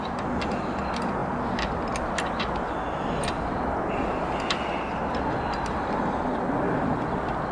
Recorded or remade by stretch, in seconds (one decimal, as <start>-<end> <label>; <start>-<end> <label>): 0.0-7.5 recorded